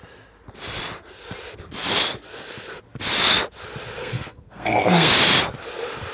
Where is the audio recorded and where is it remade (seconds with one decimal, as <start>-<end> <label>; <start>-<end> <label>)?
0.0-4.0 recorded; 4.0-5.1 remade; 5.1-6.1 recorded